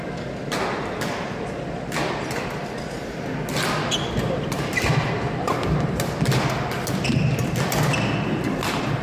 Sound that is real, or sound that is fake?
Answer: real